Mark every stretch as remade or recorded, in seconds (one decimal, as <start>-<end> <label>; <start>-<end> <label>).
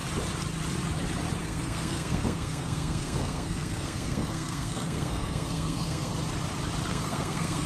0.0-1.4 recorded; 1.4-6.1 remade; 6.1-6.9 recorded; 6.9-7.7 remade